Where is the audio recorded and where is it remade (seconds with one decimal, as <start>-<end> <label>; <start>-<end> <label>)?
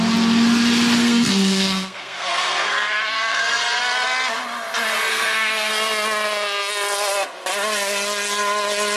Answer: 0.0-1.0 recorded; 1.0-3.8 remade; 3.8-5.1 recorded; 5.1-5.7 remade; 5.7-9.0 recorded